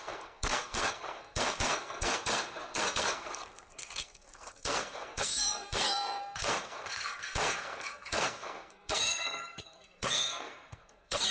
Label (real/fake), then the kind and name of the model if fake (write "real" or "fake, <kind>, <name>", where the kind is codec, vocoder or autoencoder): fake, codec, SNAC